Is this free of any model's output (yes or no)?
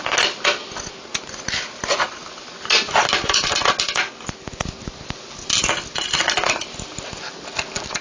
yes